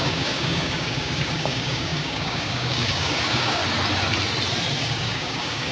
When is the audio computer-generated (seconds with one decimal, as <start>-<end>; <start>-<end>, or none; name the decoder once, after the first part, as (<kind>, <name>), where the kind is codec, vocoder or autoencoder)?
0.0-3.6 (codec, DAC); 4.8-5.7